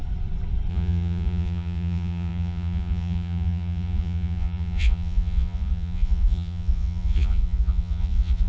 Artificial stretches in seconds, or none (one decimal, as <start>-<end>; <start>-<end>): 0.7-8.5